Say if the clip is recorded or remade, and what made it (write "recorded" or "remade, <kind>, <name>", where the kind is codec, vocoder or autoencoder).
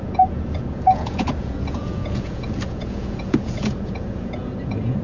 remade, vocoder, Vocos